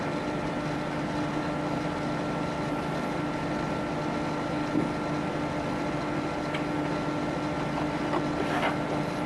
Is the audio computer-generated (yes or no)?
no